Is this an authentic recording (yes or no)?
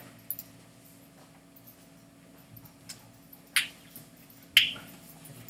yes